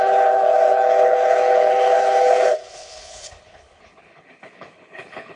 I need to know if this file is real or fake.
fake